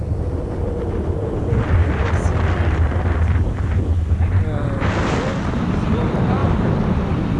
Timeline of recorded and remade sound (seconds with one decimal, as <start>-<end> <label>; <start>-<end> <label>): 0.0-7.4 recorded